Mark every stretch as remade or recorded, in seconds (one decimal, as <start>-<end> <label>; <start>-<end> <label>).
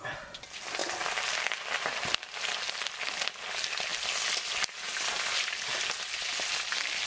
0.0-7.1 recorded